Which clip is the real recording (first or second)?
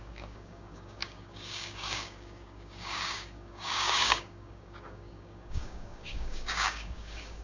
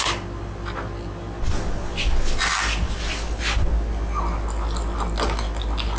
second